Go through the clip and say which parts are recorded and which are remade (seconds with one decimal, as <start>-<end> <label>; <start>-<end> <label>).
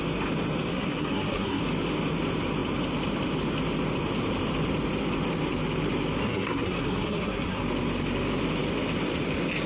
0.0-0.7 recorded; 0.7-1.6 remade; 1.6-6.2 recorded; 6.2-7.6 remade; 7.6-9.7 recorded